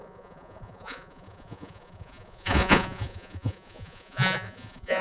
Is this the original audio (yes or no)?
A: no